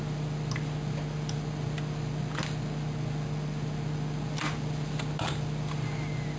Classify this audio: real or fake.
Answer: real